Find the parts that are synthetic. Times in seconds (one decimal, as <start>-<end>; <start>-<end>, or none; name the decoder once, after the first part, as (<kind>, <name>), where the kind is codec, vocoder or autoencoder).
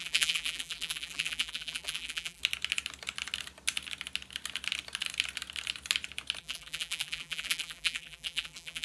0.0-2.4 (vocoder, BigVGAN v2); 6.4-8.8